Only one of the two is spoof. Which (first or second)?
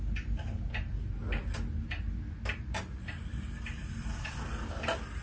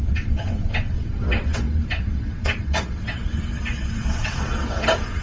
second